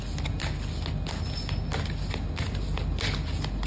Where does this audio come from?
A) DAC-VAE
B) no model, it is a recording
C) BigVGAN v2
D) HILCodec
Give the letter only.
B